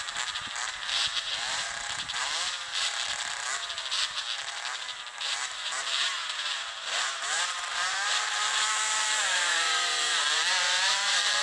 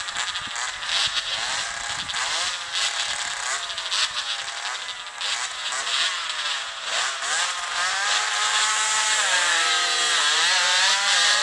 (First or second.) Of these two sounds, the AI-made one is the first